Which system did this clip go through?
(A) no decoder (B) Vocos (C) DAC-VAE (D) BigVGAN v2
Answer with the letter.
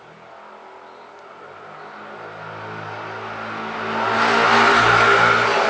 A